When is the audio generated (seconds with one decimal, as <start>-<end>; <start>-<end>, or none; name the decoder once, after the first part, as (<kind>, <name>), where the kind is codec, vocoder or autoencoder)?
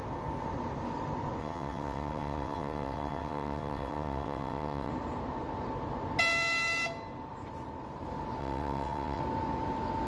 1.4-4.9 (vocoder, WaveNeXt); 8.4-9.2